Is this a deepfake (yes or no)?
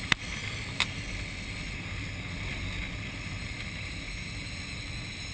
no